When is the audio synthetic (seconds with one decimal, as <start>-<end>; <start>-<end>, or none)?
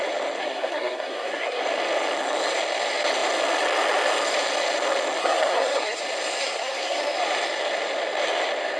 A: 0.4-1.6; 5.2-6.0; 6.4-7.0